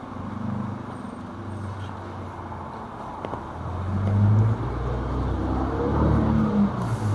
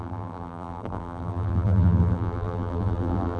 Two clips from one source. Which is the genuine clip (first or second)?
first